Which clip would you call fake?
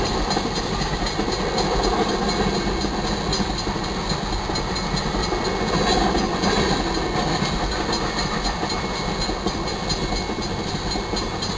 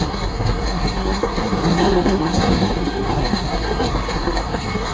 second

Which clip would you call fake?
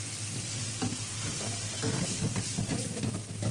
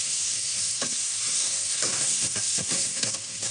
second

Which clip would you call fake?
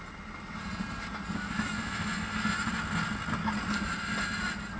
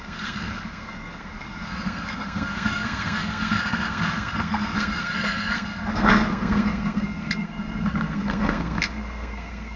second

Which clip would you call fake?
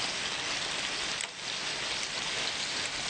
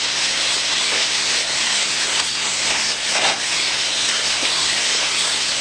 second